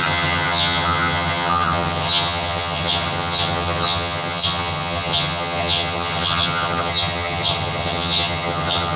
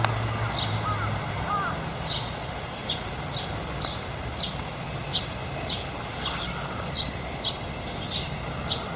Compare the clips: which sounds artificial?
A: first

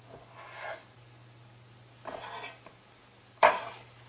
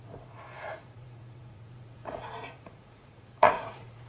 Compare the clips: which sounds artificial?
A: second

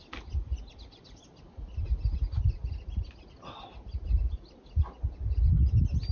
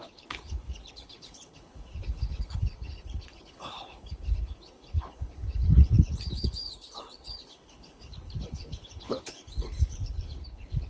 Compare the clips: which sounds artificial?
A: second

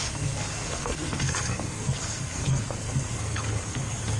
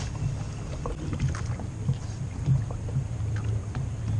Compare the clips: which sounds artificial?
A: first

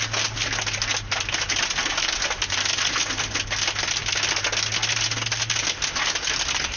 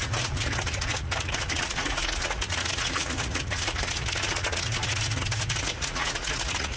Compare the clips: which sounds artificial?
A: second